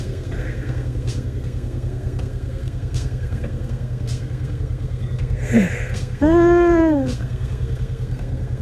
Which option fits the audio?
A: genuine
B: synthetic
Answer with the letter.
B